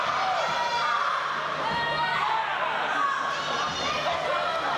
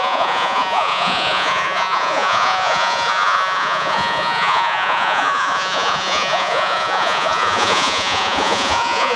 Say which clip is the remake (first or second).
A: second